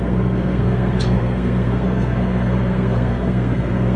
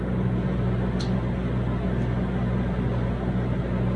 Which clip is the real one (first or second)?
second